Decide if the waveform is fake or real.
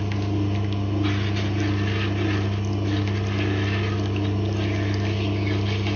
real